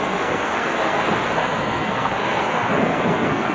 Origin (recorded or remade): remade